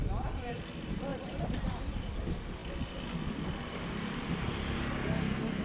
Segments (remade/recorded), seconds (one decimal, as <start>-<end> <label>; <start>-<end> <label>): 0.0-0.6 remade; 0.6-1.1 recorded; 1.1-1.6 remade; 1.6-5.6 recorded